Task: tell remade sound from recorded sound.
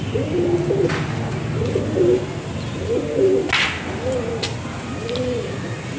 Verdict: recorded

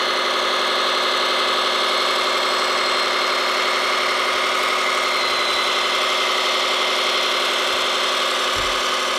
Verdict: recorded